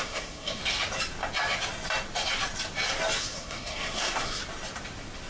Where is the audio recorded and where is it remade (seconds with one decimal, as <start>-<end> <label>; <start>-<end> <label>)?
0.0-0.6 remade; 0.6-3.2 recorded; 3.2-4.4 remade; 4.4-5.3 recorded